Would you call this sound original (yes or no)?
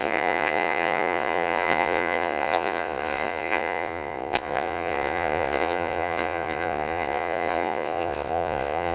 no